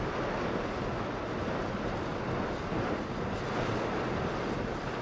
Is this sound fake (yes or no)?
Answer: no